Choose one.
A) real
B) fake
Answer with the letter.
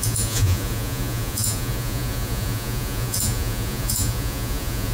B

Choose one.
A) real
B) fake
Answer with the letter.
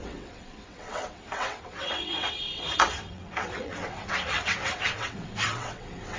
B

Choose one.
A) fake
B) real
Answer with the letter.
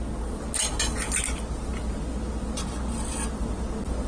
B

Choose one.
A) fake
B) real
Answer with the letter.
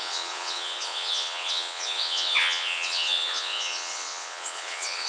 A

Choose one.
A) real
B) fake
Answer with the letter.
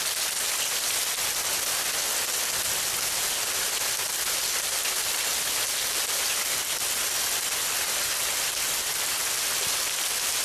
A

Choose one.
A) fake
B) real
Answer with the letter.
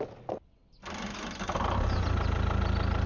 B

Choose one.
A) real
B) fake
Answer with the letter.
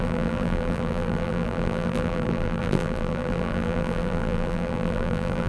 B